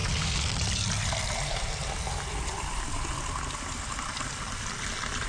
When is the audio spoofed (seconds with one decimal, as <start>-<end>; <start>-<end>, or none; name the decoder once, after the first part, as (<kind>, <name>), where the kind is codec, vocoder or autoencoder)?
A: none